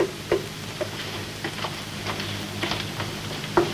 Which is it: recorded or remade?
recorded